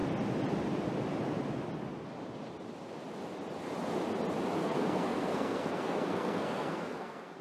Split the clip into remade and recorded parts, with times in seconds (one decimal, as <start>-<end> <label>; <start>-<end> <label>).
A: 0.0-4.6 recorded; 4.6-7.4 remade

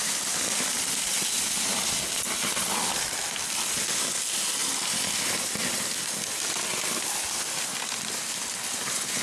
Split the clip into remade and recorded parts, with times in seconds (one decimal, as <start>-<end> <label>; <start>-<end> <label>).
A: 0.0-9.2 recorded

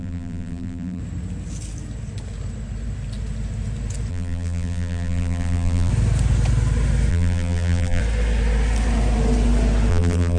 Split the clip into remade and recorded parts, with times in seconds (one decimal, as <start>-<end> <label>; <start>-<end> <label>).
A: 0.0-1.0 remade; 1.0-4.1 recorded; 4.1-5.9 remade; 5.9-7.1 recorded; 7.1-8.0 remade; 8.0-9.9 recorded; 9.9-10.4 remade

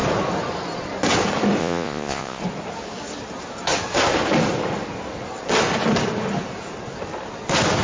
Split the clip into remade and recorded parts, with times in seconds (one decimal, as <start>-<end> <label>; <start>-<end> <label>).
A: 0.0-1.6 recorded; 1.6-2.4 remade; 2.4-7.8 recorded

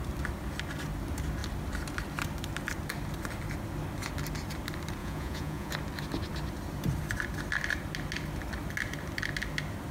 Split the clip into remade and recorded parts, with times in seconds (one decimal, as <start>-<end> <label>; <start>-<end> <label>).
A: 0.0-5.0 recorded; 5.0-5.7 remade; 5.7-9.9 recorded

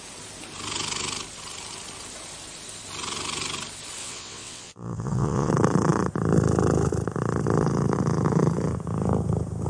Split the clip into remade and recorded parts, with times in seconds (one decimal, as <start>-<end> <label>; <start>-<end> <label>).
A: 0.0-4.0 recorded; 4.0-5.5 remade; 5.5-9.7 recorded

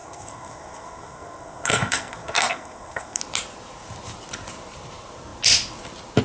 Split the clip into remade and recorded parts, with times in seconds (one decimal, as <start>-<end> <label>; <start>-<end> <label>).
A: 0.0-3.2 remade; 3.2-6.2 recorded